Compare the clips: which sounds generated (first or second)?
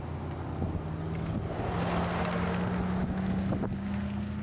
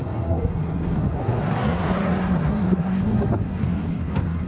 second